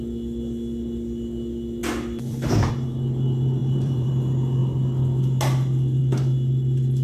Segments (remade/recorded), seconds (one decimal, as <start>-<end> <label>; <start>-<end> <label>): 0.0-1.8 recorded; 1.8-2.7 remade; 2.7-3.6 recorded; 3.6-4.1 remade; 4.1-7.0 recorded